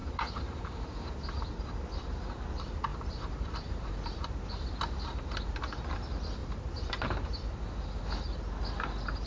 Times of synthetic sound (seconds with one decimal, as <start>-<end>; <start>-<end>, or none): 0.0-1.1; 2.9-4.8; 6.4-7.4